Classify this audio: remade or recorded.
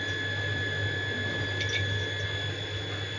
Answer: recorded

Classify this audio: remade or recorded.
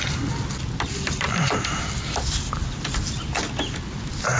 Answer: recorded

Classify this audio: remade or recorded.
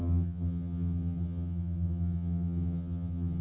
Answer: remade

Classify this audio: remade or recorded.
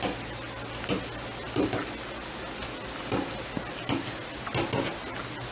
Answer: recorded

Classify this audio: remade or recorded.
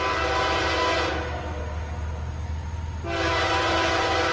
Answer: recorded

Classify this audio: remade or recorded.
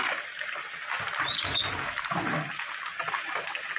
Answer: recorded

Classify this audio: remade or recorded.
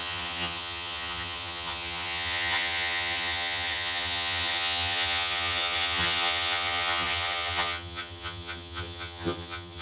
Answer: remade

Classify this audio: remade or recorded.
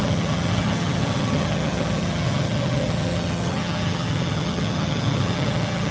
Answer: remade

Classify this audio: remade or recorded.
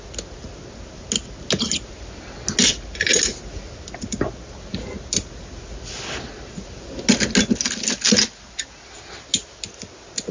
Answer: recorded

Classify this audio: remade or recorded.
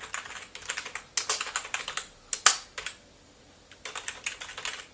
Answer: recorded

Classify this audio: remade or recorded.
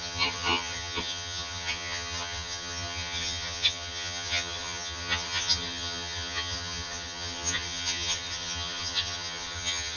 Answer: remade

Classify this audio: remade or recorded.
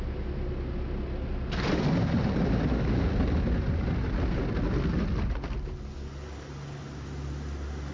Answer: recorded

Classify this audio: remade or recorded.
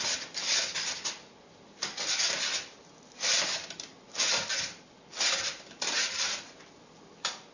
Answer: recorded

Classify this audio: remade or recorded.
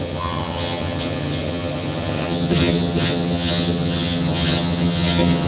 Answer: remade